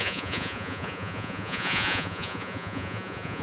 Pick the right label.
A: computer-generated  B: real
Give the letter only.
A